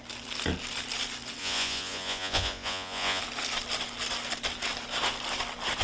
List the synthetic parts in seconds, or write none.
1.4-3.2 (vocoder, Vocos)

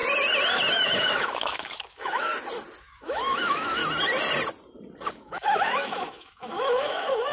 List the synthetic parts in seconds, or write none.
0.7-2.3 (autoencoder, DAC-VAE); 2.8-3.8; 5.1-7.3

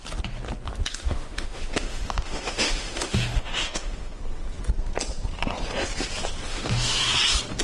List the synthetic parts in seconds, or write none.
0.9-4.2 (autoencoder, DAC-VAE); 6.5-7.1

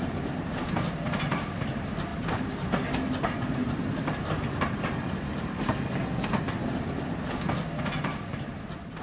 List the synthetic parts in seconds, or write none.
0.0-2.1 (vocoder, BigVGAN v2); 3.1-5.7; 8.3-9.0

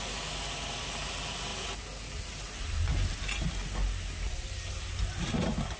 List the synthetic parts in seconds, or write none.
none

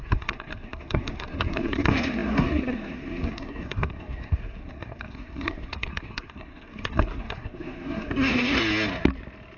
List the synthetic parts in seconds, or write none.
0.0-8.6 (codec, SNAC)